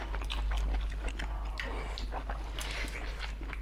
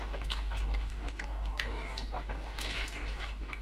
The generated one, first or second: second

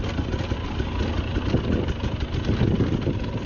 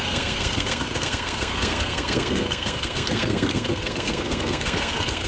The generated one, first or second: second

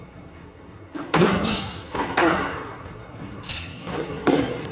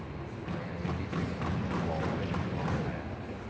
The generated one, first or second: first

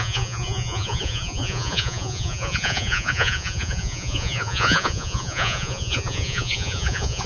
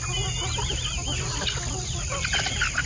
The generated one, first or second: first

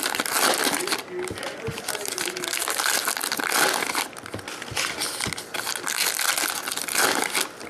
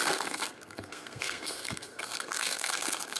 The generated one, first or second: second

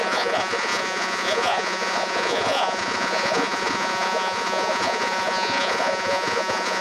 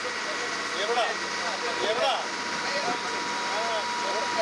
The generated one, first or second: first